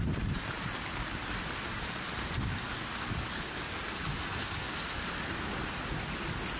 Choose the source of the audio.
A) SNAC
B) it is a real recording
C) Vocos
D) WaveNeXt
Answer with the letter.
B